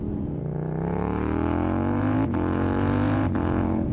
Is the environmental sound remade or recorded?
remade